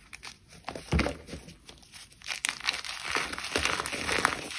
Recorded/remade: recorded